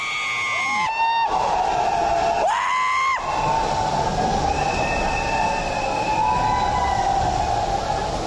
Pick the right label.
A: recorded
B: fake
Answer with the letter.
A